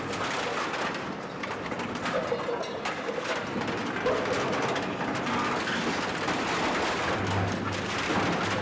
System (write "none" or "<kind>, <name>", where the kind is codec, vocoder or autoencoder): none